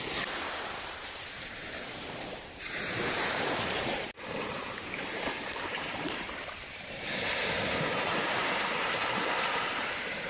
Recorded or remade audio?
remade